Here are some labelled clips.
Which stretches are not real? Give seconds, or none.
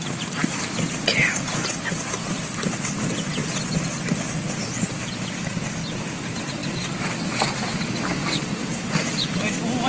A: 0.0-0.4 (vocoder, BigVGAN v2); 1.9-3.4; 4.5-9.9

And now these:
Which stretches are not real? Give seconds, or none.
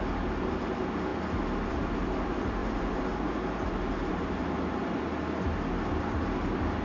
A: none